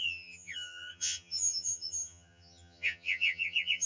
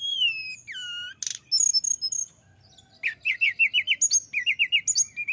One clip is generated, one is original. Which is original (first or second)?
second